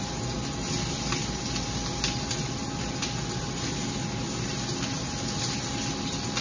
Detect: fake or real real